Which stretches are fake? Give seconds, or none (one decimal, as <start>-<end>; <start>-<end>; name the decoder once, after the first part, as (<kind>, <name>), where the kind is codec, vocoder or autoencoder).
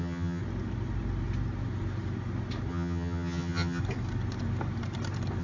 0.0-0.4 (vocoder, HiFi-GAN); 2.7-3.8